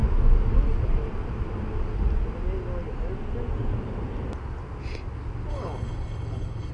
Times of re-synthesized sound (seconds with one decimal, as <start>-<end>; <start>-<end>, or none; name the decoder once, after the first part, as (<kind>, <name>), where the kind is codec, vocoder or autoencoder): 5.5-6.7 (codec, HILCodec)